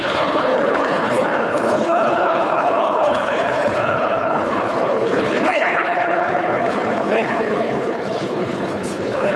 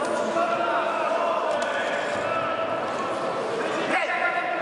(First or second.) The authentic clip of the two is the second